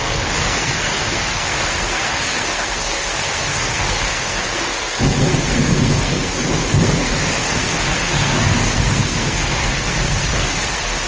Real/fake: fake